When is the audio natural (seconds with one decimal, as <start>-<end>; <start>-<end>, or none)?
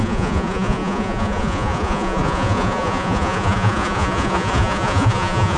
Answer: none